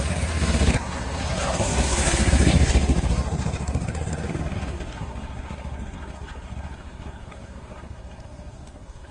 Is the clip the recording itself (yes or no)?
no